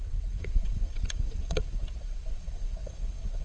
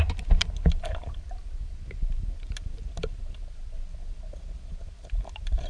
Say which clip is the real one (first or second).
second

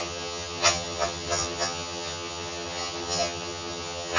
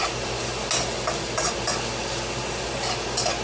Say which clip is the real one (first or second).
second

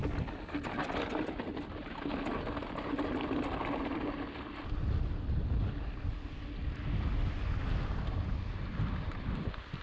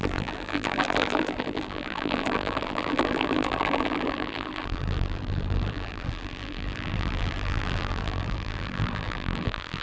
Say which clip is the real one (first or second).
first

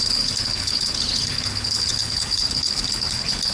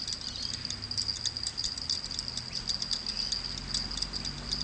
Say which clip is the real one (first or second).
second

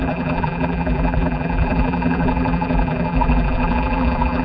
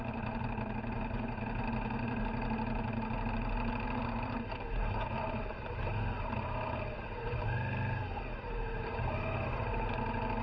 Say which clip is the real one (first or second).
second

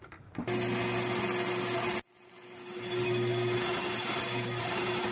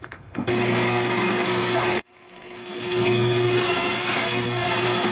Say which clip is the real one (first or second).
first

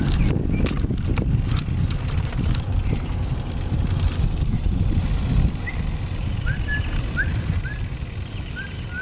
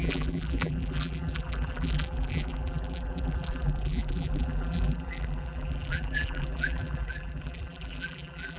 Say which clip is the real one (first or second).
first